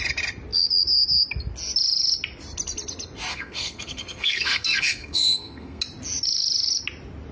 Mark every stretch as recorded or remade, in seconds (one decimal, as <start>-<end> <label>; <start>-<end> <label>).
0.0-3.3 recorded; 3.3-5.8 remade; 5.8-7.3 recorded